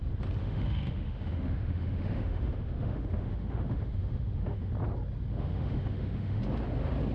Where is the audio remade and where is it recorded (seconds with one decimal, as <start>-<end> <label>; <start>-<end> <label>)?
0.0-0.4 recorded; 0.4-4.7 remade; 4.7-5.3 recorded; 5.3-6.4 remade; 6.4-7.1 recorded